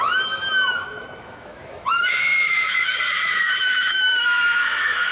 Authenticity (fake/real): fake